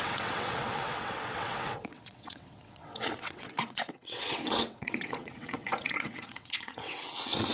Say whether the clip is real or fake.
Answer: fake